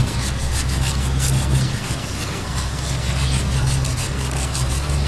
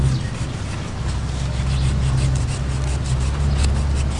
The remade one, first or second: first